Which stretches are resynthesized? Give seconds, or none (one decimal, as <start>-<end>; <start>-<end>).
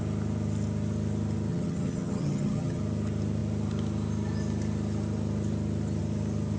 1.5-2.8